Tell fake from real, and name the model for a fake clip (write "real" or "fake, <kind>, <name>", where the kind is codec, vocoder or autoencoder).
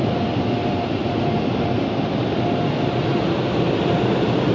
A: real